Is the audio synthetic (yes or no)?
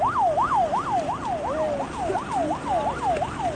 no